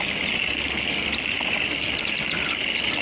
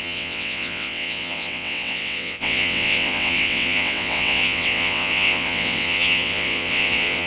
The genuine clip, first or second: first